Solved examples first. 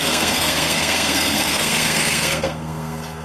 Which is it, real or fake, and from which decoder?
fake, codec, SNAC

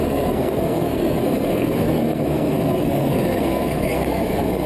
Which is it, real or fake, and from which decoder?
fake, codec, SNAC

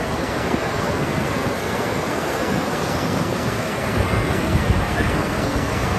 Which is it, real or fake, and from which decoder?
fake, codec, SNAC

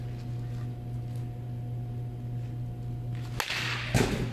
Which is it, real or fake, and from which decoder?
real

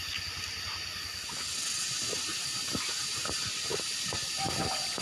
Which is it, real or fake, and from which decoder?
real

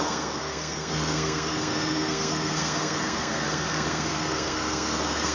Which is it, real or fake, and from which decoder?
fake, codec, SNAC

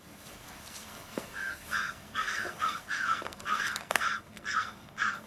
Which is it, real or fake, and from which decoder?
fake, codec, SNAC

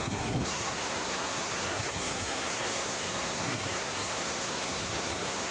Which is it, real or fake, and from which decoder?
fake, codec, SNAC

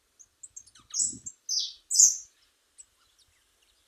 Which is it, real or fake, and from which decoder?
real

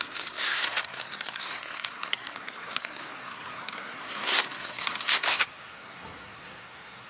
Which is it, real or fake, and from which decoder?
fake, codec, SNAC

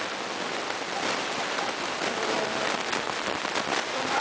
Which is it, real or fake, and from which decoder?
real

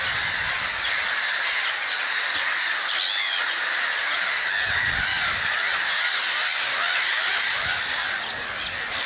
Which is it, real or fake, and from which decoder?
real